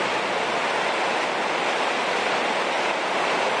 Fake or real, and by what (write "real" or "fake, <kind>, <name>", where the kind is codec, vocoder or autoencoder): real